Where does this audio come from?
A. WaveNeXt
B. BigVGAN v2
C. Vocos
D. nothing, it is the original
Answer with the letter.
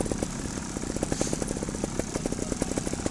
B